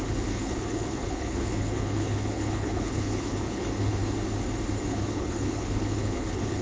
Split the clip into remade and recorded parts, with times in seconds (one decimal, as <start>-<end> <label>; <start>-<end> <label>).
0.0-4.0 remade; 4.0-4.9 recorded; 4.9-6.6 remade